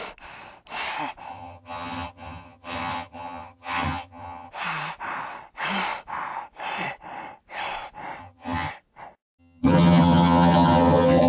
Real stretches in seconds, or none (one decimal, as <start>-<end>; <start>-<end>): 0.0-1.3; 4.5-8.2; 8.7-9.4